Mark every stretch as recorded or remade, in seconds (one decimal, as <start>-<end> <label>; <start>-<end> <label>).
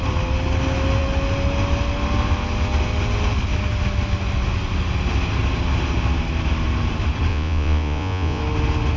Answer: 0.0-7.3 recorded; 7.3-8.4 remade; 8.4-9.0 recorded